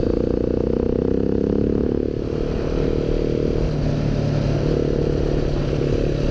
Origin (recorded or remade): recorded